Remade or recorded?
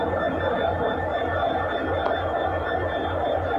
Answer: recorded